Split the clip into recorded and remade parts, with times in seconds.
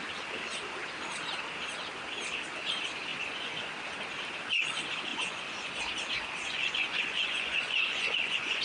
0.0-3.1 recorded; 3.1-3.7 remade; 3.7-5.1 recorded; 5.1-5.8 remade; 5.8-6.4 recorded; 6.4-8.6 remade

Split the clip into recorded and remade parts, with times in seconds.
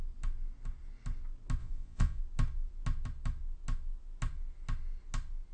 0.0-1.6 recorded; 1.6-2.2 remade; 2.2-5.5 recorded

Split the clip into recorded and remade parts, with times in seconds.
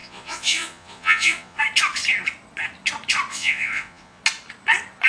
0.0-1.6 remade; 1.6-3.3 recorded; 3.3-4.2 remade; 4.2-5.1 recorded